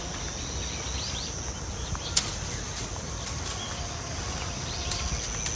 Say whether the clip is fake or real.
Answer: real